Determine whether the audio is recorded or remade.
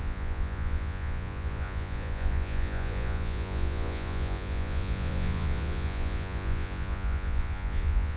remade